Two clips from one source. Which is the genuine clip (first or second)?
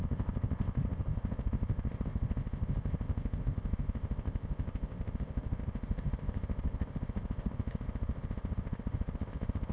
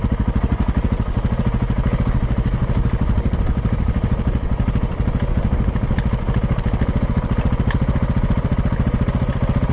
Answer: second